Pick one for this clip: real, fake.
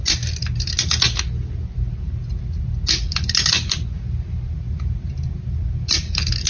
real